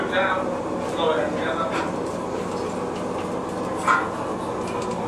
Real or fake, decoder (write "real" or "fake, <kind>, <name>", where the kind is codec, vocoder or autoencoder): real